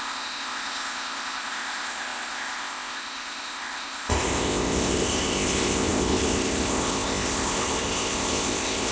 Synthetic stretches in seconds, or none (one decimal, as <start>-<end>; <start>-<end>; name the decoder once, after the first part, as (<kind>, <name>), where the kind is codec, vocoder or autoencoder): 0.0-8.9 (codec, ZipCodec)